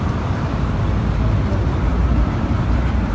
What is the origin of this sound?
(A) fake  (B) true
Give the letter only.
A